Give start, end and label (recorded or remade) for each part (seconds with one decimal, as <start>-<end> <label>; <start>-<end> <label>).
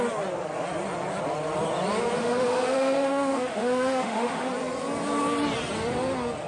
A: 0.0-2.2 recorded; 2.2-4.5 remade; 4.5-6.5 recorded